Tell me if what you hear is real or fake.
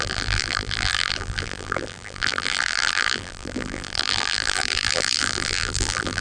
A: fake